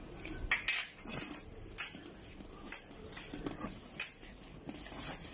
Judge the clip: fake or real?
real